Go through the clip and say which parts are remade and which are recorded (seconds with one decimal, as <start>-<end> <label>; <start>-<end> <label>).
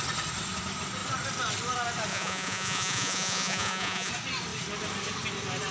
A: 0.0-2.1 recorded; 2.1-4.1 remade; 4.1-5.7 recorded